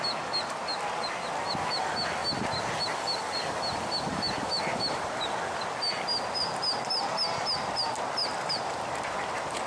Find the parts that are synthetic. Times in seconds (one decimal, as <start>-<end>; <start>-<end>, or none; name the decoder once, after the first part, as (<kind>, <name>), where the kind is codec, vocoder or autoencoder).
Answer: 4.1-5.3 (vocoder, BigVGAN v2); 8.2-9.7